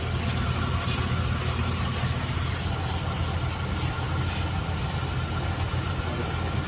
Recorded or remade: recorded